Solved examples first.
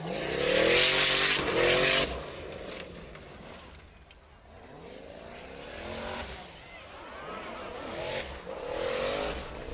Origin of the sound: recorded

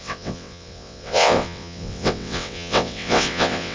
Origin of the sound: remade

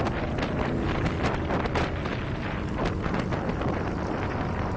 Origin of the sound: recorded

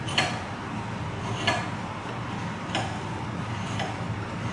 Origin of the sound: recorded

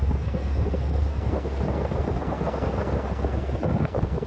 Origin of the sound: remade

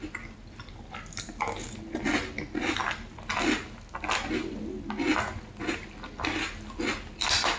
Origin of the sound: recorded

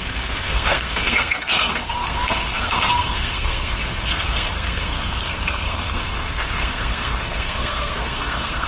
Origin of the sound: remade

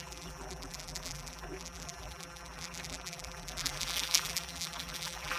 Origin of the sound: remade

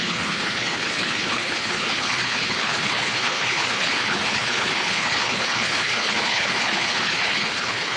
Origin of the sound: remade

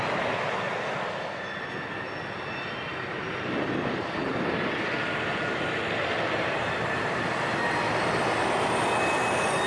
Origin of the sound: recorded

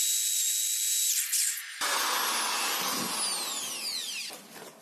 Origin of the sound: recorded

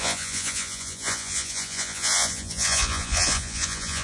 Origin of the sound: remade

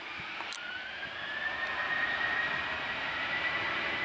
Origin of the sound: remade